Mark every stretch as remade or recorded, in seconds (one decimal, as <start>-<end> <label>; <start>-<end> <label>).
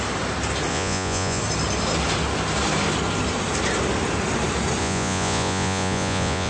0.0-0.7 recorded; 0.7-1.4 remade; 1.4-4.8 recorded; 4.8-6.5 remade